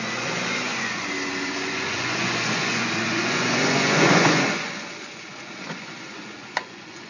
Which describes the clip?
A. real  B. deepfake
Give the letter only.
B